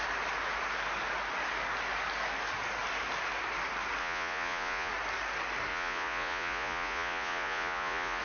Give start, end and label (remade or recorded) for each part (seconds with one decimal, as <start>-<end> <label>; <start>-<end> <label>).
0.0-4.0 recorded; 4.0-4.9 remade; 4.9-5.7 recorded; 5.7-8.2 remade

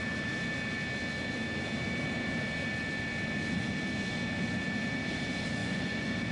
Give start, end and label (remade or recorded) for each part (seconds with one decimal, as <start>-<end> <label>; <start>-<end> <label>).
0.0-5.6 recorded; 5.6-6.3 remade

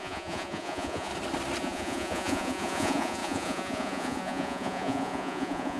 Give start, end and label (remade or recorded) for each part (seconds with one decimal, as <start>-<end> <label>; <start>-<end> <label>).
0.0-1.1 remade; 1.1-1.6 recorded; 1.6-5.8 remade

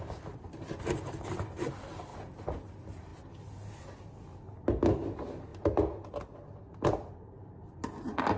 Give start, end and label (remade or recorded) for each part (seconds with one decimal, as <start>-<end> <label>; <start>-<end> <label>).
0.0-8.4 recorded

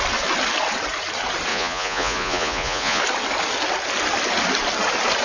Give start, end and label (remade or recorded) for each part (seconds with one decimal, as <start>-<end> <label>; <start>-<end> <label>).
0.0-1.5 recorded; 1.5-3.0 remade; 3.0-5.2 recorded

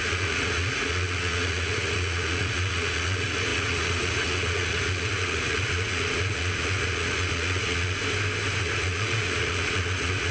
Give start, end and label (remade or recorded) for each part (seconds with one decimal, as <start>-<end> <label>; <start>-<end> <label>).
0.0-8.0 remade; 8.0-8.6 recorded; 8.6-10.3 remade